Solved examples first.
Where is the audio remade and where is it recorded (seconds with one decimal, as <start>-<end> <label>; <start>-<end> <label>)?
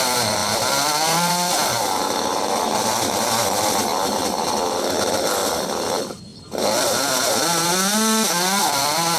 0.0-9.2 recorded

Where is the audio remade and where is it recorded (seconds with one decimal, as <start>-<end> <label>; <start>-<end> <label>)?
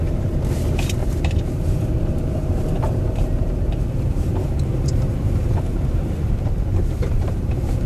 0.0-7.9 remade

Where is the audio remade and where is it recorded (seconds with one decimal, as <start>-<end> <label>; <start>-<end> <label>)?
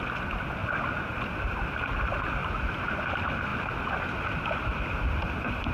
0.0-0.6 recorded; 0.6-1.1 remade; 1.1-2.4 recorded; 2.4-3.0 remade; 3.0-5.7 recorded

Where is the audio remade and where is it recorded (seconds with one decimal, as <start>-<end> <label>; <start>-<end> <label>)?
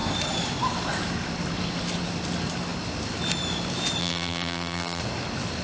0.0-4.0 recorded; 4.0-5.0 remade; 5.0-5.6 recorded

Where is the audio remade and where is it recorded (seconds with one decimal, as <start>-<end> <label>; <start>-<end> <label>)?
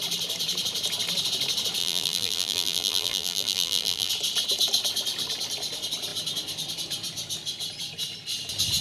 0.0-1.8 recorded; 1.8-4.1 remade; 4.1-8.8 recorded